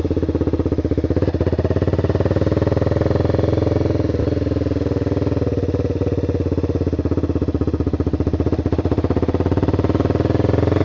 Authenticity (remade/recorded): recorded